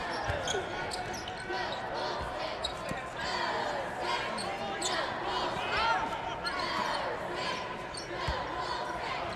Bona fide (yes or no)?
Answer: yes